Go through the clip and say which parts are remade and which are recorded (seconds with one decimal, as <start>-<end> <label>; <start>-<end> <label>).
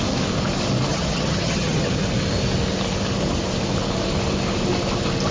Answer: 0.0-0.9 recorded; 0.9-2.0 remade; 2.0-5.3 recorded